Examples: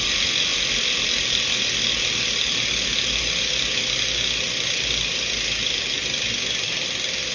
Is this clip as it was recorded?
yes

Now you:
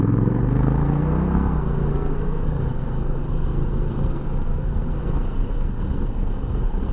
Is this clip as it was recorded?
no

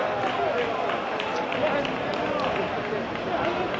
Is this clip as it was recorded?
yes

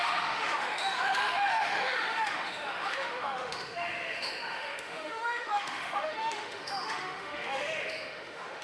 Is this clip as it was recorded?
no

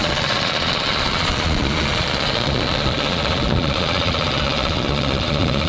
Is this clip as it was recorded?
no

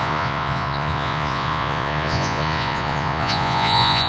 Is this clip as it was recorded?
no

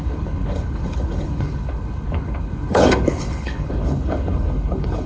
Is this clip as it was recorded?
no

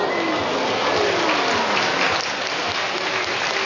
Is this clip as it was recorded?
yes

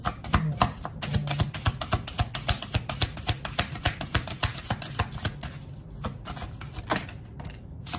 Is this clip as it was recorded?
yes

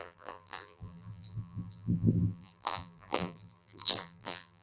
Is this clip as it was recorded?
no